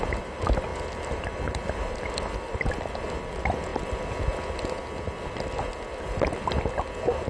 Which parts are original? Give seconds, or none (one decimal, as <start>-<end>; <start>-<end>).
3.7-7.3